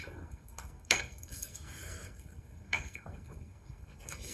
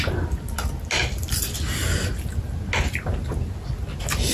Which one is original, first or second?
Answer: second